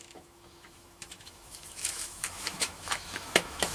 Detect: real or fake fake